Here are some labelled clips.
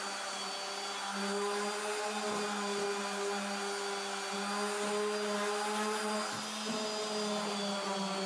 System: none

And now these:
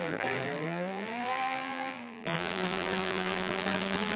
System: vocoder, BigVGAN v2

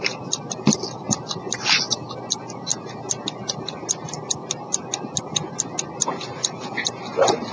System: none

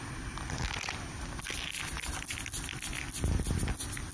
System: none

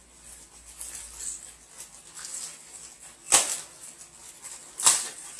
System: none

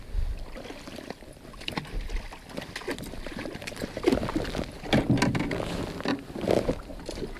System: none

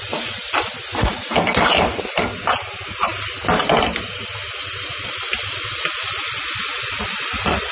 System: none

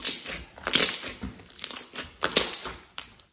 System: none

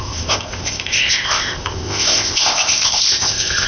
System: codec, ZipCodec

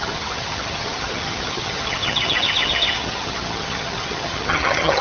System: vocoder, HiFi-GAN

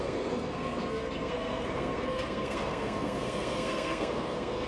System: codec, SNAC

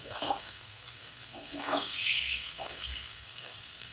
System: codec, SNAC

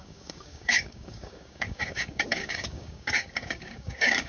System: codec, DAC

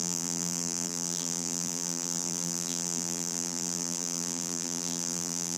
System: vocoder, BigVGAN v2